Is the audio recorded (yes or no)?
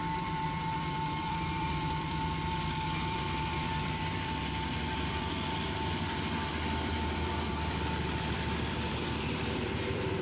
no